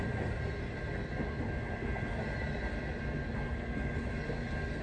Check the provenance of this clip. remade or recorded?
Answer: recorded